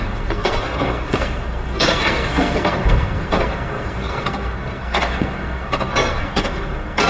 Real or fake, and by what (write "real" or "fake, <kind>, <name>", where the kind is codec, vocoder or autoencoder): fake, codec, SNAC